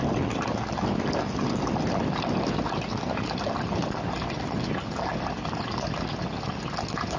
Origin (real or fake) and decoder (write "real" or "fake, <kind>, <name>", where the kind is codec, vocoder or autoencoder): real